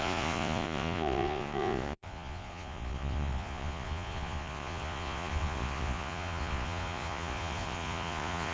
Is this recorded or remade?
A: remade